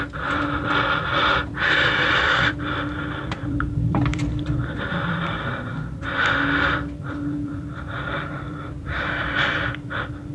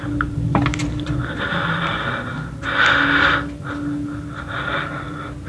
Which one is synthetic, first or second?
first